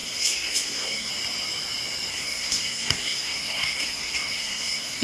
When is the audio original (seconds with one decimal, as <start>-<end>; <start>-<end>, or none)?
1.1-2.1